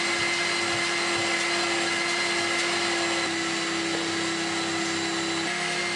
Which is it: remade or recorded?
recorded